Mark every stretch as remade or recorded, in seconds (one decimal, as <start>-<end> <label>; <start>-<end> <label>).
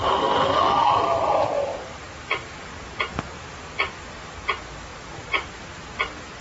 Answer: 0.0-6.4 recorded